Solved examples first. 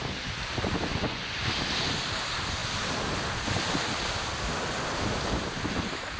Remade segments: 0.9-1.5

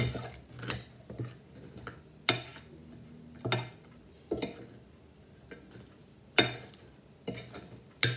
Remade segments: none

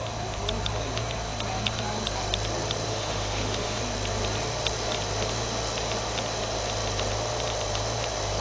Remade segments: 2.9-3.8

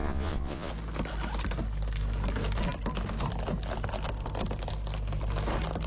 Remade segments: 0.0-0.7